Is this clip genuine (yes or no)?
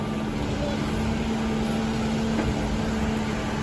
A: yes